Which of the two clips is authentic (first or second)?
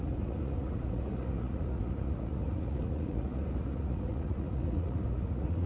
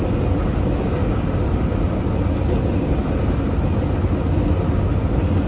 second